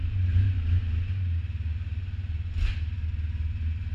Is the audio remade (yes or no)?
no